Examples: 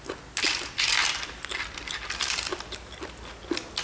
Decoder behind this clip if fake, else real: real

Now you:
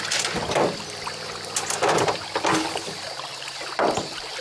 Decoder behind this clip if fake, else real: real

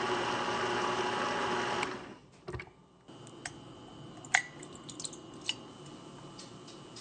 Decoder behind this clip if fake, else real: real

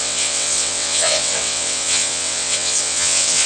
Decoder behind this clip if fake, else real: fake, vocoder, WaveNeXt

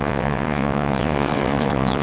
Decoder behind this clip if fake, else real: fake, vocoder, WaveNeXt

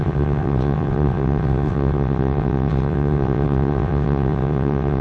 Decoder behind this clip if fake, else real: fake, vocoder, WaveNeXt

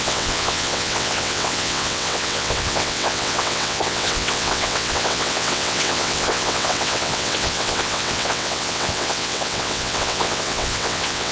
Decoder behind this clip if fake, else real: fake, vocoder, WaveNeXt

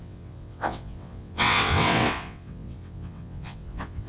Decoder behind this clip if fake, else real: fake, vocoder, WaveNeXt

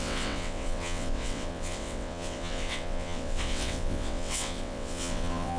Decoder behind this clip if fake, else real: fake, vocoder, WaveNeXt